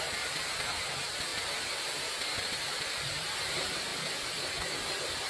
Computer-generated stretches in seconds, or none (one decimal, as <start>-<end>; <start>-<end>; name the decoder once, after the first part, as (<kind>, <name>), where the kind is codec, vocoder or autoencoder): 0.0-1.3 (vocoder, BigVGAN v2); 1.8-3.9